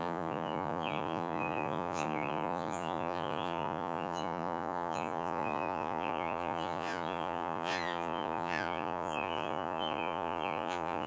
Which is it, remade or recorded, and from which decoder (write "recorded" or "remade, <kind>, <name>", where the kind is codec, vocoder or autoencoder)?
remade, vocoder, Vocos